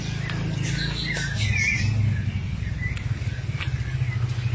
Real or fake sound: real